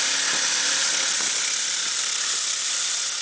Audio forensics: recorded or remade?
recorded